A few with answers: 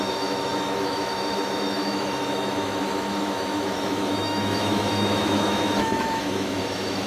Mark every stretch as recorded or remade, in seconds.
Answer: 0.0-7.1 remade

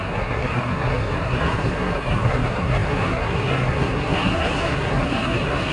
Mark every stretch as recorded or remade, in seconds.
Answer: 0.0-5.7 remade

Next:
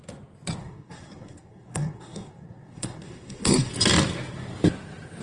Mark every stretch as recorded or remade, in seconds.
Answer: 0.0-0.6 recorded; 0.6-3.7 remade; 3.7-5.2 recorded

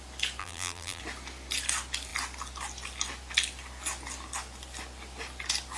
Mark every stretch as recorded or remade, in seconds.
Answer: 0.0-0.4 recorded; 0.4-1.0 remade; 1.0-5.8 recorded

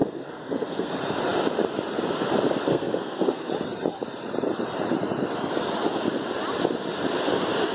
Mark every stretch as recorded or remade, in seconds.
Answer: 0.0-0.9 remade; 0.9-2.7 recorded; 2.7-3.5 remade; 3.5-7.7 recorded

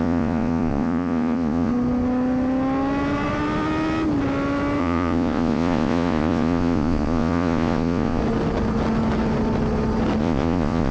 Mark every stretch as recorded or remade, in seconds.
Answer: 0.0-1.7 remade; 1.7-4.8 recorded; 4.8-8.2 remade; 8.2-10.2 recorded; 10.2-10.9 remade